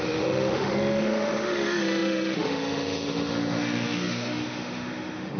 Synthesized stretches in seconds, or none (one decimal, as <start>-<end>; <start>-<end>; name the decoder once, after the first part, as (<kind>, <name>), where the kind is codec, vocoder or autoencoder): 0.0-5.4 (autoencoder, DAC-VAE)